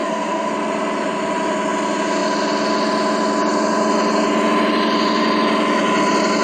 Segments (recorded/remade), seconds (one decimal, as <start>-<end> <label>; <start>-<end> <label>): 0.0-0.5 remade; 0.5-6.4 recorded